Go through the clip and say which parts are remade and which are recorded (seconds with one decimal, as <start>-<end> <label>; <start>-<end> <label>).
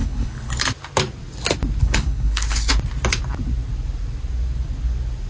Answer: 0.0-0.6 remade; 0.6-1.8 recorded; 1.8-2.7 remade; 2.7-5.3 recorded